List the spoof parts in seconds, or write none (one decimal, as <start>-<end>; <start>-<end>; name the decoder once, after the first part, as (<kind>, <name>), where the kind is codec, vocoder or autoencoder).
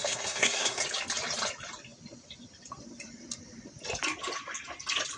0.0-0.8 (codec, SNAC)